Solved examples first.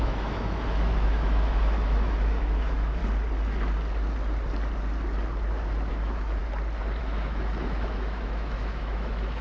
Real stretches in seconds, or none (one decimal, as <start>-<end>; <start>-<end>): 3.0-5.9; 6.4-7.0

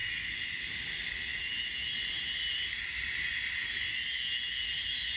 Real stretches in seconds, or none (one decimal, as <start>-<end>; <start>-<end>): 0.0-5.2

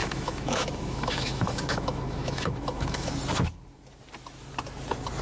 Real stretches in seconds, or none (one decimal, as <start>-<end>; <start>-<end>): 3.1-5.2

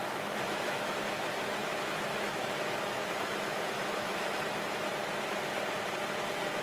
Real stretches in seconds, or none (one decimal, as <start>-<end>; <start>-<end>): 1.0-1.6; 4.6-6.6